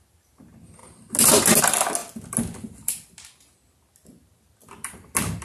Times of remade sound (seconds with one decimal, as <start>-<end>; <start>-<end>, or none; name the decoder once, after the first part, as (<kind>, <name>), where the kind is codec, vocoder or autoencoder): none